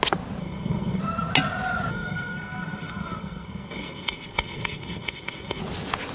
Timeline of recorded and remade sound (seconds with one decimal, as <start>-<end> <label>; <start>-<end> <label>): 0.0-0.4 recorded; 0.4-1.0 remade; 1.0-1.9 recorded; 1.9-5.6 remade; 5.6-6.1 recorded